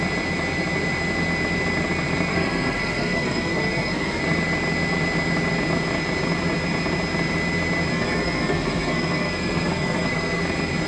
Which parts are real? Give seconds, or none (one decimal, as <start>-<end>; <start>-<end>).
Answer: 0.0-2.3; 4.2-7.9; 10.4-10.9